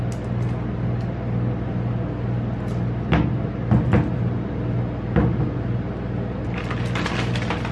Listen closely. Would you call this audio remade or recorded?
recorded